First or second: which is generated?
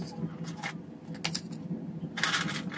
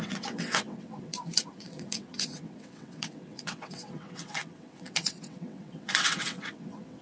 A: second